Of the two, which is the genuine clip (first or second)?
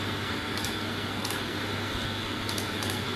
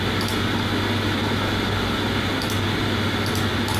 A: second